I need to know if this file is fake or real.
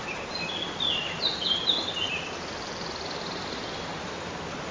fake